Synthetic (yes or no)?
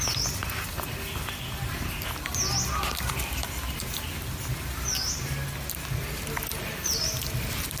no